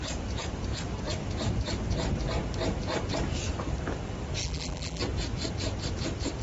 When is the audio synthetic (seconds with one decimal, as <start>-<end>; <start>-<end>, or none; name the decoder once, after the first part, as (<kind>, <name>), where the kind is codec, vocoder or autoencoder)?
4.4-5.0 (vocoder, BigVGAN v2)

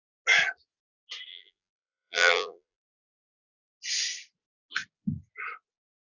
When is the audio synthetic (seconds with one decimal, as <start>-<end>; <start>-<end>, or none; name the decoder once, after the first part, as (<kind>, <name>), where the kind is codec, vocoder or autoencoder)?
1.3-3.7 (vocoder, BigVGAN v2)

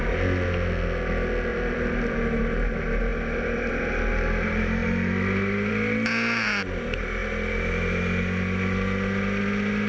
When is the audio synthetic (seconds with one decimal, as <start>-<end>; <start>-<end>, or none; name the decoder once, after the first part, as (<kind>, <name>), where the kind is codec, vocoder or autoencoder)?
1.5-2.4 (vocoder, BigVGAN v2)

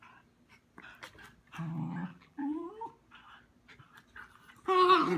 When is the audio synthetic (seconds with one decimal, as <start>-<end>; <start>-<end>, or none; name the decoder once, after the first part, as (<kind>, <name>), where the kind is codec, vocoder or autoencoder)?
2.1-2.7 (vocoder, BigVGAN v2)

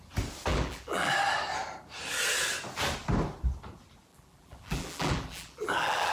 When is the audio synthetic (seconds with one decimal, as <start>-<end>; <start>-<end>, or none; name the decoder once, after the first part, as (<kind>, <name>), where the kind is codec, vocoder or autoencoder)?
0.5-1.1 (vocoder, BigVGAN v2); 4.1-6.1

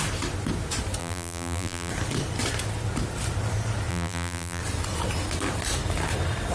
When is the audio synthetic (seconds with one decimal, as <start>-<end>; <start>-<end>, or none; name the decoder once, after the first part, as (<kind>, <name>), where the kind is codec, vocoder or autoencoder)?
1.0-1.9 (vocoder, BigVGAN v2); 3.9-4.6

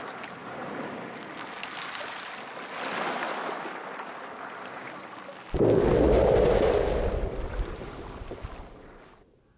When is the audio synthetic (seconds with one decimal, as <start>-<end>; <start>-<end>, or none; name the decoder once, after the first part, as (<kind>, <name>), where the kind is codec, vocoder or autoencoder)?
0.4-1.1 (vocoder, BigVGAN v2)